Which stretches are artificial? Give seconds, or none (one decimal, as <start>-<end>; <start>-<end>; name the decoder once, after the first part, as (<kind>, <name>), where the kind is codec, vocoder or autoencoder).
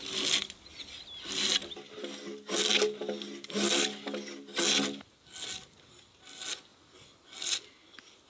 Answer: none